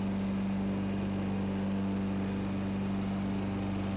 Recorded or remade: recorded